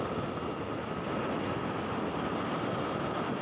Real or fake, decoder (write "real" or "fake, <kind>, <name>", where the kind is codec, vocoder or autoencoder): real